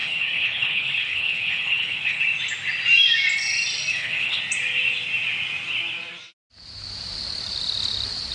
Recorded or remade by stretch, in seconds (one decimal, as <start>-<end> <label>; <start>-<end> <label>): 0.0-2.2 remade; 2.2-3.9 recorded; 3.9-4.4 remade; 4.4-8.3 recorded